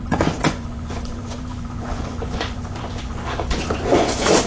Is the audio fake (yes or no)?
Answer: yes